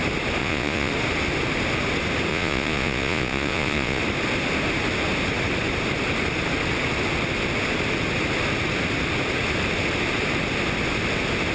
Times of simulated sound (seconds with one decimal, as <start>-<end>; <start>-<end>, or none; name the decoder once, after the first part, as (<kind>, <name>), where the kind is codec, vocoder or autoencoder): 0.4-0.9 (vocoder, Vocos); 2.3-4.0